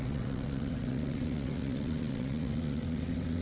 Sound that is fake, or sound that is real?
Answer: fake